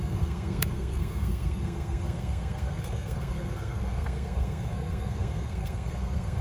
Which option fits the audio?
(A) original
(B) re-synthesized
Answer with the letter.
B